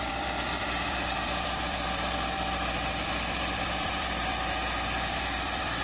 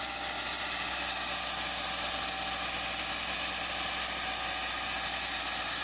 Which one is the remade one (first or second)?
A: first